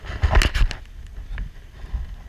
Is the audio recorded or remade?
recorded